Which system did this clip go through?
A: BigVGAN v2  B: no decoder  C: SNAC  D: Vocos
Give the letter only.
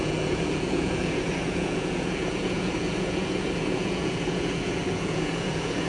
D